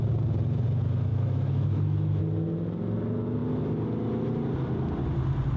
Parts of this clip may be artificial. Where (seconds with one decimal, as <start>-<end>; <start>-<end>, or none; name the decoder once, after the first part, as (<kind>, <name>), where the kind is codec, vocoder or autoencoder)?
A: 1.1-2.2 (autoencoder, DAC-VAE)